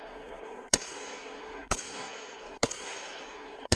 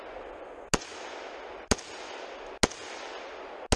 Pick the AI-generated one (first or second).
first